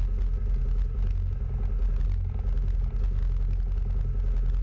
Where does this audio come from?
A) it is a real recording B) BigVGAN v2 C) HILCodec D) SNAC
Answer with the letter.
A